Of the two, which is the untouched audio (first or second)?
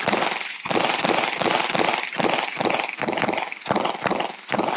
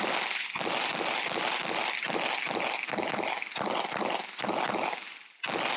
second